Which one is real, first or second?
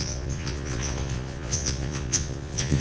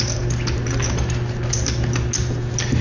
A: second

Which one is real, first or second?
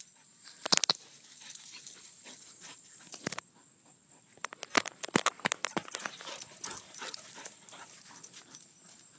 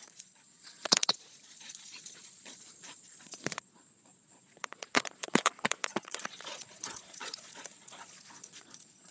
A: first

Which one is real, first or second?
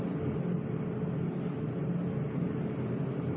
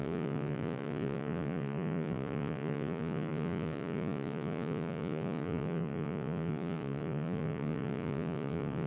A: first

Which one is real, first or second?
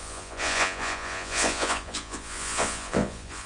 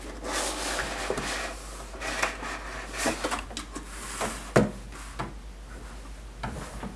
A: second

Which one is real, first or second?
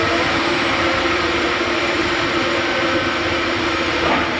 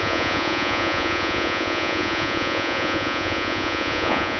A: first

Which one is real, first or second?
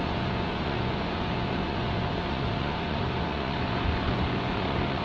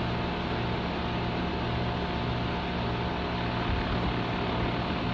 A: second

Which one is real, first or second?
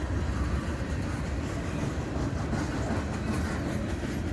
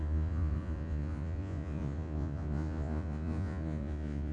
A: first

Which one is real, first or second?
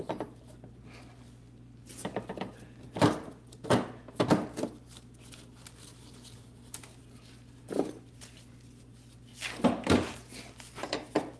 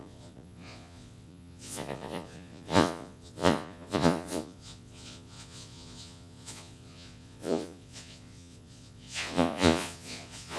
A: first